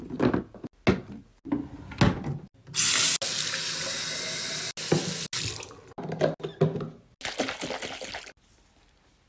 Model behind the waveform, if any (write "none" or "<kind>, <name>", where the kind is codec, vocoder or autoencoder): none